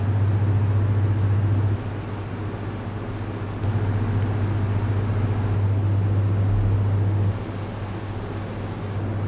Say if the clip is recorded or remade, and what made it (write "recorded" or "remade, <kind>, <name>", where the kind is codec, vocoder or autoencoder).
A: recorded